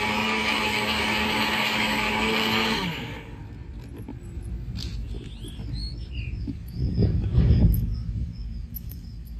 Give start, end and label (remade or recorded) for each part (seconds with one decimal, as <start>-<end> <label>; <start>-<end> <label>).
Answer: 0.0-3.4 remade; 3.4-6.4 recorded; 6.4-9.4 remade